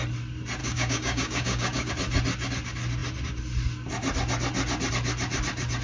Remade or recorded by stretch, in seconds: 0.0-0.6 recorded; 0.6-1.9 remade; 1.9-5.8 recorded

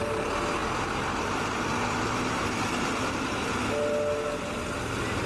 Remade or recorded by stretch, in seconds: 0.0-5.3 recorded

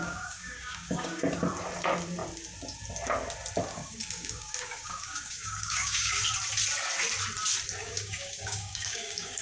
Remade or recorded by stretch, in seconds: 0.0-1.2 remade; 1.2-3.7 recorded; 3.7-6.2 remade; 6.2-7.8 recorded; 7.8-9.4 remade